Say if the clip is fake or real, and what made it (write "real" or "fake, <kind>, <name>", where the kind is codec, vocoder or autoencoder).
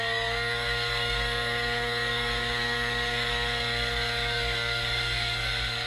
fake, codec, DAC